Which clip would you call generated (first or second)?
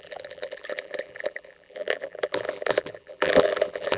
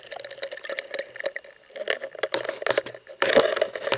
first